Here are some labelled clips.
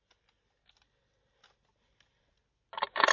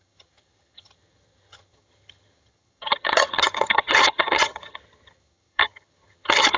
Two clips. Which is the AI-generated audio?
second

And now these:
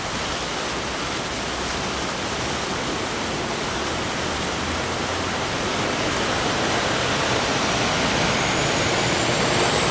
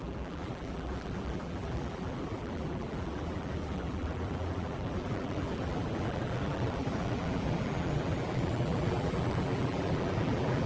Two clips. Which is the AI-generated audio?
second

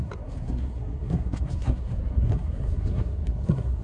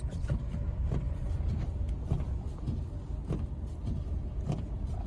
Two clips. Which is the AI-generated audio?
first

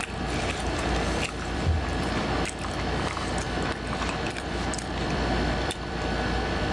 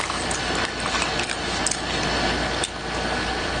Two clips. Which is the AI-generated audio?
first